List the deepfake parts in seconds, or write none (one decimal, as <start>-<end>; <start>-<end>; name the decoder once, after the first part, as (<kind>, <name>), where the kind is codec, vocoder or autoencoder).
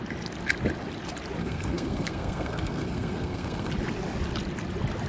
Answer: 1.4-3.7 (codec, SNAC)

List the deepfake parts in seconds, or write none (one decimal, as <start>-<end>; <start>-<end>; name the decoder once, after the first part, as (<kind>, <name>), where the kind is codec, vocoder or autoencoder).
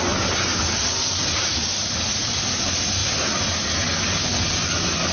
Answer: 0.5-2.5 (vocoder, BigVGAN v2)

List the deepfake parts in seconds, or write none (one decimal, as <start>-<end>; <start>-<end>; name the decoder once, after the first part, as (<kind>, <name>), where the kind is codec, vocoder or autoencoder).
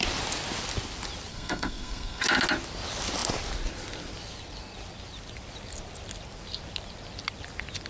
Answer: 1.3-2.2 (codec, SNAC)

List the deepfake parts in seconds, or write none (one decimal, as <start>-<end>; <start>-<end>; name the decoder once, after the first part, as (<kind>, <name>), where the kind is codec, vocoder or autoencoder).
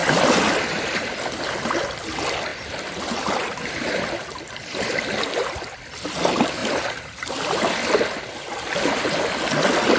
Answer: 0.0-1.4 (vocoder, BigVGAN v2); 2.5-5.0; 6.6-7.7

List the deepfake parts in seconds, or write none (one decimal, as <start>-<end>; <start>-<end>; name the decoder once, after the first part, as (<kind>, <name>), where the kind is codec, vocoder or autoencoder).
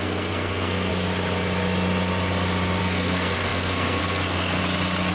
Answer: 0.0-0.9 (codec, SNAC); 2.8-4.6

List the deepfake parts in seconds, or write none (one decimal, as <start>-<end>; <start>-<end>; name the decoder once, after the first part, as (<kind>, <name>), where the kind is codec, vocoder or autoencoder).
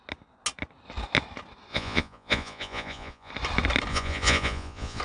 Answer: 1.7-3.3 (vocoder, Vocos); 3.9-5.0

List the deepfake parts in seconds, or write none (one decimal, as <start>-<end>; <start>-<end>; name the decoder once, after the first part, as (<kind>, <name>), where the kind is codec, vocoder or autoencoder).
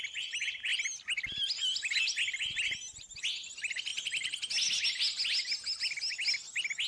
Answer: none